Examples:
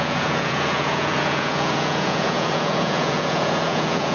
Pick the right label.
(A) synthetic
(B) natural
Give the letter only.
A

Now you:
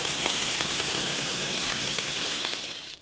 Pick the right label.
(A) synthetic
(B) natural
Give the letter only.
A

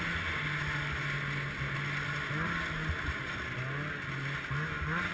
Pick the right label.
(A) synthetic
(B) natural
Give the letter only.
B